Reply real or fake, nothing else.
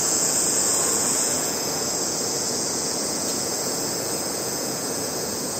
fake